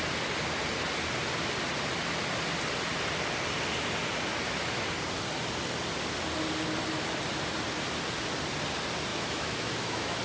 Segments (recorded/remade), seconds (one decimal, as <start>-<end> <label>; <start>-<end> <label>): 0.0-9.1 recorded; 9.1-10.2 remade